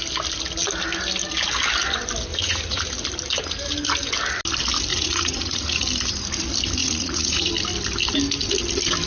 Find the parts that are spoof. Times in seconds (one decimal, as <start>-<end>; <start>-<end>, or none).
2.3-2.8; 4.9-5.8; 6.8-7.5

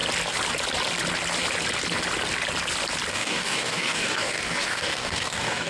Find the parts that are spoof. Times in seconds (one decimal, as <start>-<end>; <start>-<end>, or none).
3.1-5.7

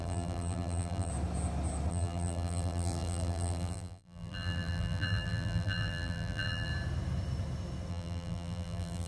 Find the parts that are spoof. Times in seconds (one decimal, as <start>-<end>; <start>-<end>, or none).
0.0-1.1; 1.9-6.7; 7.9-9.1

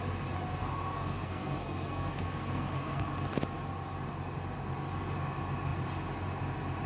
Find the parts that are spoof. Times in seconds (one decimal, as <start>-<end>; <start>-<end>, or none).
0.6-3.1

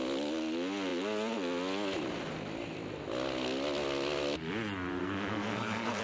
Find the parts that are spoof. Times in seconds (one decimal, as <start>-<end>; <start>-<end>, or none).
5.0-6.0

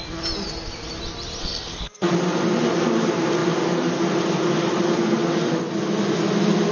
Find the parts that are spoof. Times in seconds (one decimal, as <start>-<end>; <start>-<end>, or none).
1.4-2.1

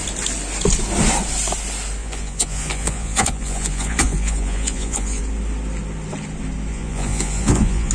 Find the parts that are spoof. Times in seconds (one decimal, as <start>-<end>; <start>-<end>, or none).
2.0-5.2; 6.7-7.9

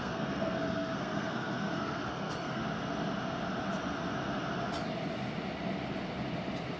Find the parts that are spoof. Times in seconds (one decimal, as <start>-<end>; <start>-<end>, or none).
0.0-2.6